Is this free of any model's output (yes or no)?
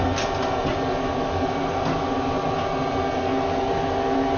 yes